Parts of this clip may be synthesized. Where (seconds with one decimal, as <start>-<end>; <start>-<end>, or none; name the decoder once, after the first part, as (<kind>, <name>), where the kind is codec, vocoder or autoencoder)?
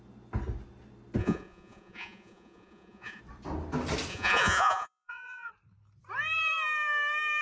1.2-3.2 (vocoder, Vocos); 4.1-5.5